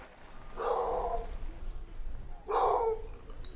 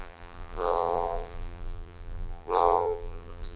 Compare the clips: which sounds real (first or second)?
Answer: first